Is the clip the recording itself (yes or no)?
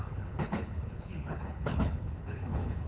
no